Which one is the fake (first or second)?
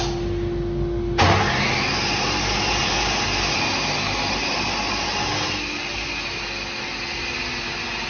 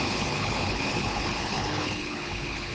second